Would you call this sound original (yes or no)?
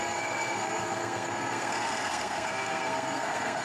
no